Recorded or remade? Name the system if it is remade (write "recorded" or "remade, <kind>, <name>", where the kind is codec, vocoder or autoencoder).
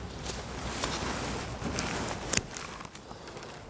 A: recorded